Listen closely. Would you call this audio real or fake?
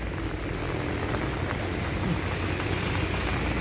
real